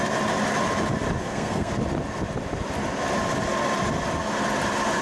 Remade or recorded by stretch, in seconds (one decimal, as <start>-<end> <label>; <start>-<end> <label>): 0.0-1.2 recorded; 1.2-1.7 remade; 1.7-5.0 recorded

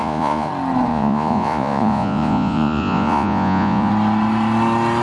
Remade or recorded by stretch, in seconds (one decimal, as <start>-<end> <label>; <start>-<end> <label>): 0.0-0.5 remade; 0.5-0.9 recorded; 0.9-3.9 remade; 3.9-5.0 recorded

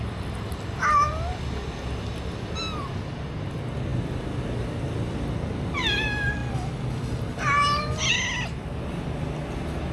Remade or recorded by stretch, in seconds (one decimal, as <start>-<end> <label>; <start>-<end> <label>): 0.0-9.9 recorded

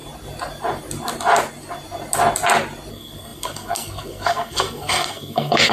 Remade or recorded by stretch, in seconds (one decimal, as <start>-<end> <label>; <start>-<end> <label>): 0.0-2.9 recorded; 2.9-5.7 remade

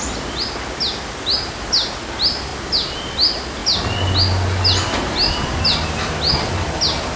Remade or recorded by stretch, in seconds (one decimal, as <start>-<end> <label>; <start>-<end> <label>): 0.0-7.2 recorded

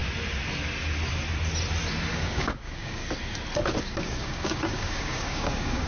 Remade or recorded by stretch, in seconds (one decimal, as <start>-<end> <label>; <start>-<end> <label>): 0.0-2.1 recorded; 2.1-3.0 remade; 3.0-3.8 recorded; 3.8-5.9 remade

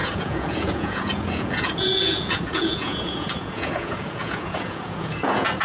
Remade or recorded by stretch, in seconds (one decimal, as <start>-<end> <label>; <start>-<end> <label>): 0.0-5.6 remade

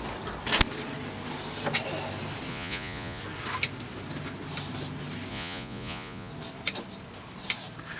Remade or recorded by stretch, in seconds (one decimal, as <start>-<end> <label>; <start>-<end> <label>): 0.0-2.5 recorded; 2.5-3.2 remade; 3.2-5.3 recorded; 5.3-6.3 remade; 6.3-8.0 recorded